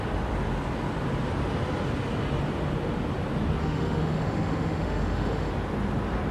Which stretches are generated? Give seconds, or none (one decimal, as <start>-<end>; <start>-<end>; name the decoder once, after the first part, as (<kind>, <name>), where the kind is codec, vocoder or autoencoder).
3.6-5.5 (autoencoder, DAC-VAE)